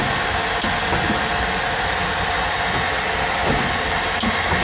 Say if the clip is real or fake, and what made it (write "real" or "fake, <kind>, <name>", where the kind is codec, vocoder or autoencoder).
real